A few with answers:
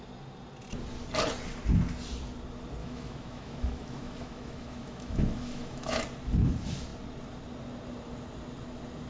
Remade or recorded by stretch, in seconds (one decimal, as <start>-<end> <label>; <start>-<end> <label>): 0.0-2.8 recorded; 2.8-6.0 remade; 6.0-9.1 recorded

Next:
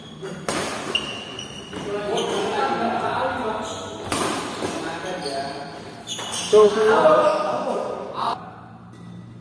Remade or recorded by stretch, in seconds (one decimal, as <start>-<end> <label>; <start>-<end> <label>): 0.0-7.3 recorded; 7.3-7.9 remade; 7.9-9.4 recorded

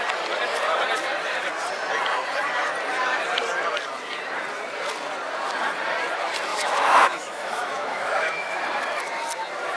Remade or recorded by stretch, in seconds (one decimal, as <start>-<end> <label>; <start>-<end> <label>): 0.0-6.5 recorded; 6.5-8.6 remade; 8.6-9.8 recorded